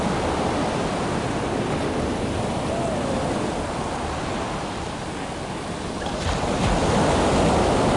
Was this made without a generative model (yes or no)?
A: yes